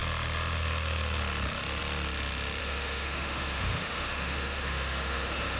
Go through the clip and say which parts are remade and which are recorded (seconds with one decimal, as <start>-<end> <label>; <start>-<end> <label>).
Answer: 0.0-2.6 recorded; 2.6-5.6 remade